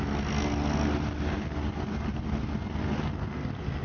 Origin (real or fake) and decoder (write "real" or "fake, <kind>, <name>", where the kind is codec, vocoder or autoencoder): real